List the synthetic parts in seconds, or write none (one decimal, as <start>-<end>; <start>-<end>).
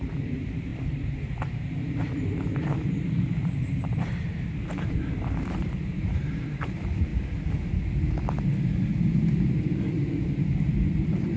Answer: 0.0-7.1; 9.9-11.4